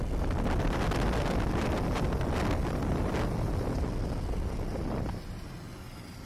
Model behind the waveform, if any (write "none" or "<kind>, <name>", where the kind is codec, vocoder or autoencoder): none